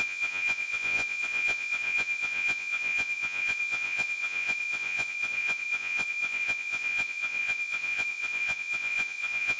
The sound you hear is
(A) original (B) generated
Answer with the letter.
B